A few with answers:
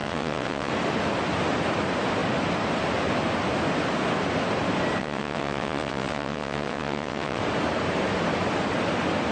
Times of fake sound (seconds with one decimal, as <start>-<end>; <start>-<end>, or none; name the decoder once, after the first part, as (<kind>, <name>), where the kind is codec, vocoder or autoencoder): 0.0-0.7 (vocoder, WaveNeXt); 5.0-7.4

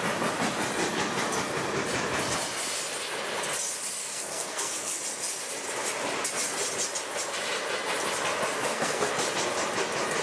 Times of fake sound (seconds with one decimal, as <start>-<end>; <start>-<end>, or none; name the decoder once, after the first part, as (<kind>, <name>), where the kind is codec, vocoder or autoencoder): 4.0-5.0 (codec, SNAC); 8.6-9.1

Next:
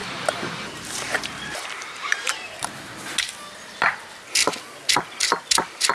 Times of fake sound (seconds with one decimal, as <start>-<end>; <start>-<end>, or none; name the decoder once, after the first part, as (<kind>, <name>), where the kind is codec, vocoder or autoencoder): 0.0-2.9 (vocoder, BigVGAN v2)